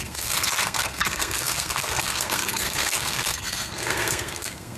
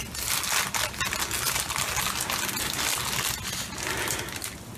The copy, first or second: first